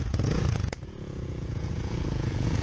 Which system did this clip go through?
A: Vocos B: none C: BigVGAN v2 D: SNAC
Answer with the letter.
A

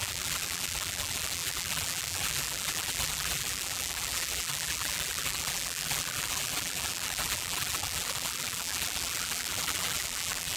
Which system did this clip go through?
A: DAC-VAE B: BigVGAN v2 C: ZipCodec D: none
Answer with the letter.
B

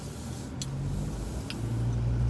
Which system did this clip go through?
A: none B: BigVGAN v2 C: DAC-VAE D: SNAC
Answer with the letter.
A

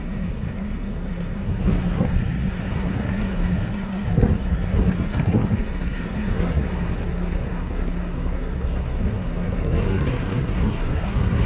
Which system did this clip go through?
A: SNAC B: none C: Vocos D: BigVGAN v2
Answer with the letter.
A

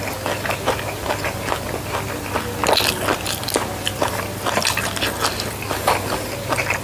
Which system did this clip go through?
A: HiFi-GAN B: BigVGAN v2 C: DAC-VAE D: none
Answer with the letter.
D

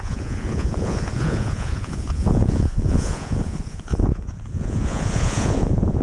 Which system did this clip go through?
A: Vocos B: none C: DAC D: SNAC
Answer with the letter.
A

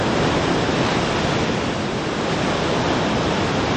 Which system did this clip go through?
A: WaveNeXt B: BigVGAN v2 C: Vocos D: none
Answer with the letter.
D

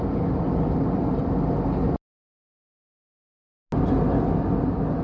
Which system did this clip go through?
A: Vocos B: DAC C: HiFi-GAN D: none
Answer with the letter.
D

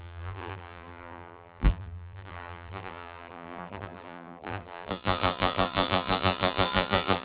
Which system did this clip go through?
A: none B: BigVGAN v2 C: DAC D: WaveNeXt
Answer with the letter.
B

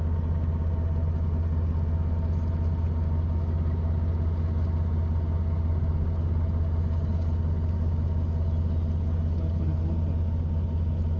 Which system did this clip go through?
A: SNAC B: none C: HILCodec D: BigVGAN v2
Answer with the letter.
B